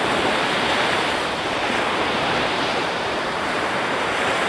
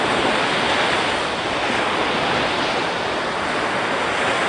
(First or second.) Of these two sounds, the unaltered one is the second